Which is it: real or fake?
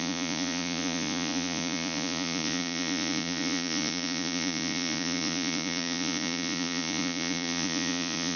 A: fake